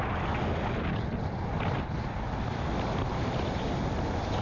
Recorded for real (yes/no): yes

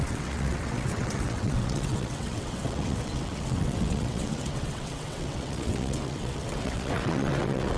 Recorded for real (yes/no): no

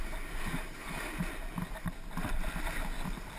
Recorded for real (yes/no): yes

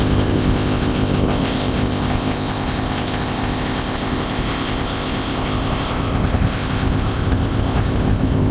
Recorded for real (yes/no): no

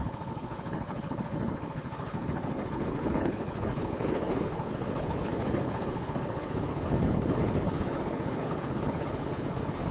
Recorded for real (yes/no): no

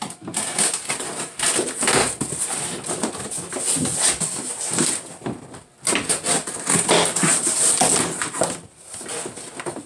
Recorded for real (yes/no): yes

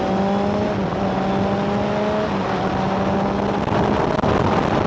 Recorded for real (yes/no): yes